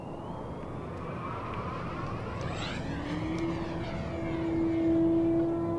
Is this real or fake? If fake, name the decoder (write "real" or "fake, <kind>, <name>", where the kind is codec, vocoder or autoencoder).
real